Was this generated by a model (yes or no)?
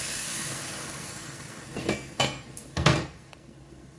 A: yes